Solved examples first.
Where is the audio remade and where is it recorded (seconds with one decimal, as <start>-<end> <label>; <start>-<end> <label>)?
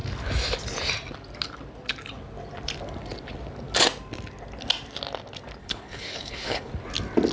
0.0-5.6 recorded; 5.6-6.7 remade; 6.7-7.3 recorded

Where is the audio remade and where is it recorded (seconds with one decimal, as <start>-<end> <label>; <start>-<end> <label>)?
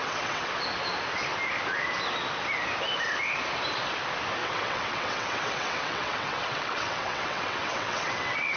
0.0-0.5 remade; 0.5-4.4 recorded; 4.4-8.6 remade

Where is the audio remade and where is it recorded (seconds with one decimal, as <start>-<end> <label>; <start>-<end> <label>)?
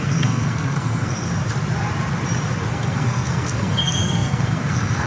0.0-1.3 remade; 1.3-2.7 recorded; 2.7-5.1 remade